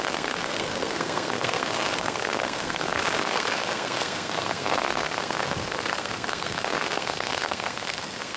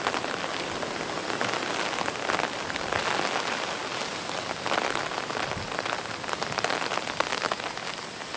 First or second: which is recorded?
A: second